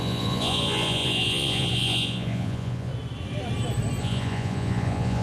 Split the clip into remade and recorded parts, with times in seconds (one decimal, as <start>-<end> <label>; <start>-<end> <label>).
0.0-2.9 remade; 2.9-4.0 recorded; 4.0-5.2 remade

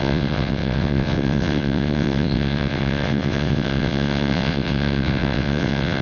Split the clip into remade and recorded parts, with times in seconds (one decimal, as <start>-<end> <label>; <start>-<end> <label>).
0.0-6.0 remade